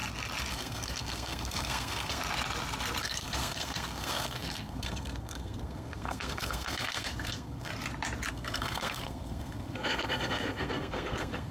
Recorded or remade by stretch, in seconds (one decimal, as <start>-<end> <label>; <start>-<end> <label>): 0.0-0.5 recorded; 0.5-2.2 remade; 2.2-3.0 recorded; 3.0-7.7 remade; 7.7-8.3 recorded; 8.3-11.5 remade